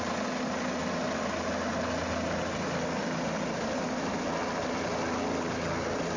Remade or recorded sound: recorded